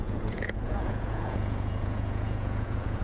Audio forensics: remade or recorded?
remade